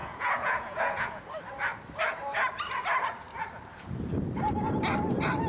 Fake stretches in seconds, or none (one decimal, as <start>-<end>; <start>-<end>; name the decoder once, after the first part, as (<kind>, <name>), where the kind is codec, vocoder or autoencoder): 0.0-1.2 (vocoder, Vocos)

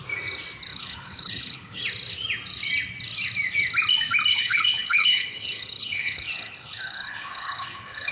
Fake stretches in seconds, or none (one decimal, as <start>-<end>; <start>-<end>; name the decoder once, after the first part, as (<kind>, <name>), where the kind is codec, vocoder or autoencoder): 0.7-1.8 (codec, HILCodec); 4.3-8.1

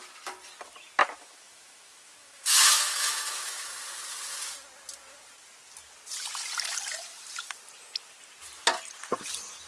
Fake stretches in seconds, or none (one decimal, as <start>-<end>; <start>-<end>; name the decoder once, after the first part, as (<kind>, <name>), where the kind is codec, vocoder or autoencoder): 1.0-3.8 (autoencoder, DAC-VAE)

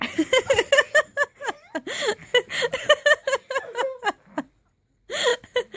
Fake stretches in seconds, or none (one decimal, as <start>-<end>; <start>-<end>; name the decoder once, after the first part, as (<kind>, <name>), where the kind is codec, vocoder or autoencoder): none

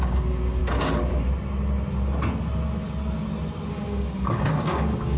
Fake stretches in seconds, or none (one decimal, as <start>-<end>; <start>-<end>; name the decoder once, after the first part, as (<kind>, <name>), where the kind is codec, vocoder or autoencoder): 0.0-0.6 (codec, DAC); 3.7-5.2